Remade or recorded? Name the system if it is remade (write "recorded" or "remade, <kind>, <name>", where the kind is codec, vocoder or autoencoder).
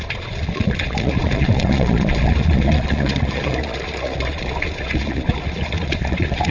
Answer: remade, vocoder, Vocos